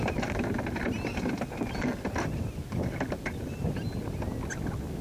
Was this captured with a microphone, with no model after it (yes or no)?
yes